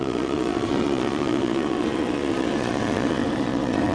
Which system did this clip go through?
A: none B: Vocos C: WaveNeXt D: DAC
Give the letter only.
B